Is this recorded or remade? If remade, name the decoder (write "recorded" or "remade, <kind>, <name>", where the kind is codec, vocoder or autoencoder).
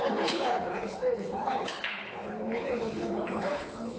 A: remade, codec, HILCodec